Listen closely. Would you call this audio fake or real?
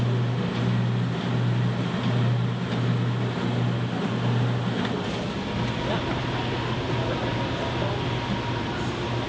real